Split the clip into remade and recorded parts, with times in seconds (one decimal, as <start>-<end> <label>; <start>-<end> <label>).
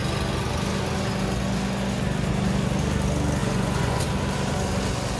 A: 0.0-3.4 recorded; 3.4-4.0 remade; 4.0-5.2 recorded